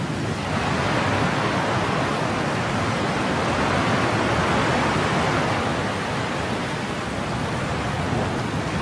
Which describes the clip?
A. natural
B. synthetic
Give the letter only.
A